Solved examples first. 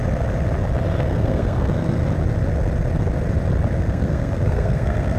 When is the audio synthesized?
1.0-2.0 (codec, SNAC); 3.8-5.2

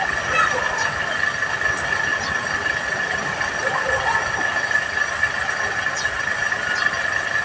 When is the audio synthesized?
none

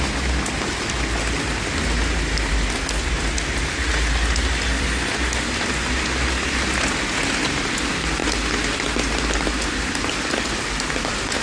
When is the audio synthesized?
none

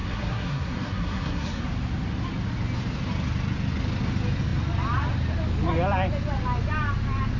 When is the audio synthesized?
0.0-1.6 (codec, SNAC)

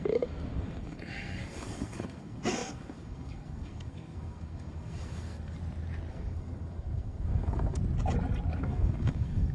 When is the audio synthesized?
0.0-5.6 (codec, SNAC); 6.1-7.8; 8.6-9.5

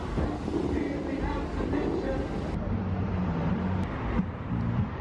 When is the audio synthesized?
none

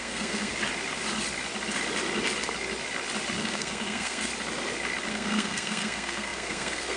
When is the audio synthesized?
0.0-0.5 (codec, SNAC); 3.4-4.3; 5.1-7.0

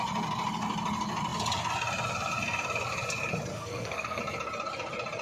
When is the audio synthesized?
3.5-4.2 (codec, SNAC)